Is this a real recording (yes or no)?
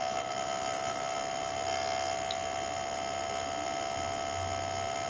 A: yes